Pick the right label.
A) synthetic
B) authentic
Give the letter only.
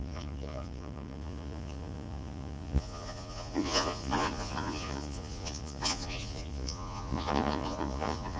A